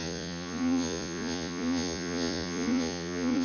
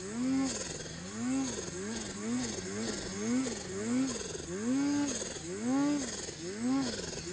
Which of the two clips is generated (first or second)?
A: first